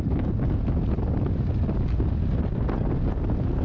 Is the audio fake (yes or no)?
no